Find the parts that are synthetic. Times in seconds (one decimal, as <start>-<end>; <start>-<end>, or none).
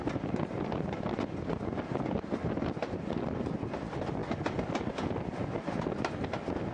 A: none